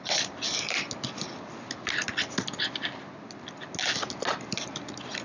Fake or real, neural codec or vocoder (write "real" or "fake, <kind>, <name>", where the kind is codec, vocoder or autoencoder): real